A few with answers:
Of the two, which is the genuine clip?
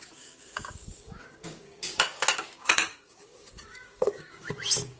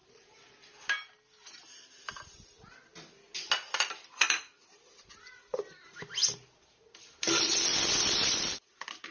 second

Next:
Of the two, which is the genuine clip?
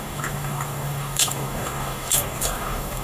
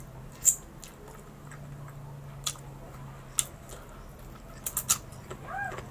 second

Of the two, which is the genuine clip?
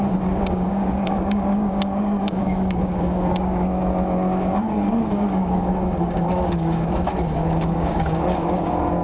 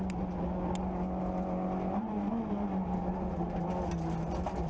second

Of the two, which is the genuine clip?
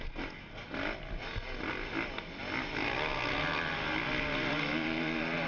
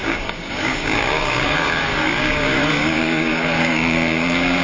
first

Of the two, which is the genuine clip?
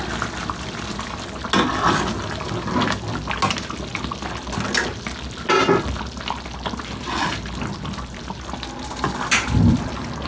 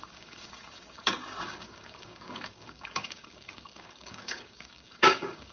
first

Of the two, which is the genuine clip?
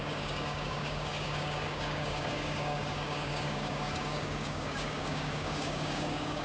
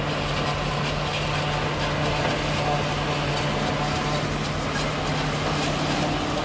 second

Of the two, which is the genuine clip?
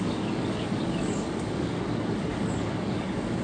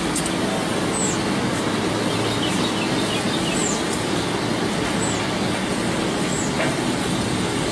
second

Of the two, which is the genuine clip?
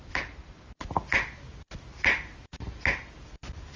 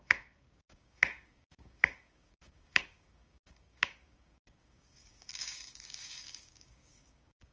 first